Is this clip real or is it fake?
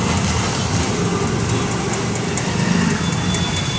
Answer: real